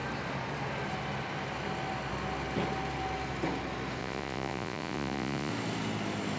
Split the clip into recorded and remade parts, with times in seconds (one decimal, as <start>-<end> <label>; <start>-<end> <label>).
0.0-4.0 recorded; 4.0-5.5 remade; 5.5-6.4 recorded